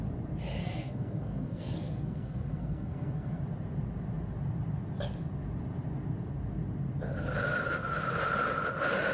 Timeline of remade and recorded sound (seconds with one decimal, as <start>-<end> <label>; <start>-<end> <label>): 0.0-0.6 recorded; 0.6-3.4 remade; 3.4-9.1 recorded